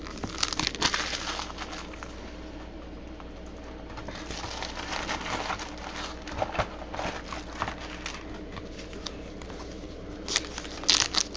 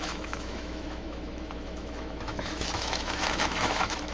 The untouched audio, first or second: first